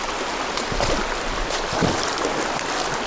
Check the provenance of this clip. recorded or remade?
recorded